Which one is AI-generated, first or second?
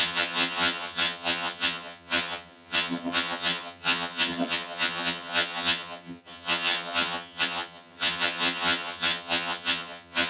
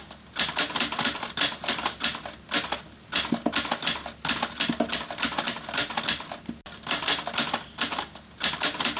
first